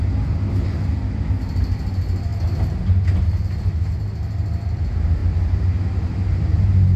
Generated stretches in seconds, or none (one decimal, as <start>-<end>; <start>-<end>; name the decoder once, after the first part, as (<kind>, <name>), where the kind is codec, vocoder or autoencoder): none